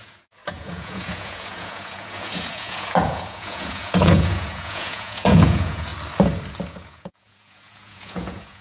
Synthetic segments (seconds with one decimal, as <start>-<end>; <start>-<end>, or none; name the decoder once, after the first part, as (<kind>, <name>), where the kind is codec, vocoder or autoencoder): 0.0-5.9 (vocoder, Vocos); 6.7-8.6